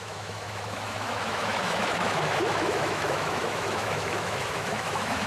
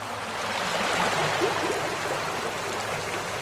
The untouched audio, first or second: second